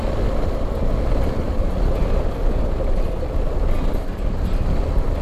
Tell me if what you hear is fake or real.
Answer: real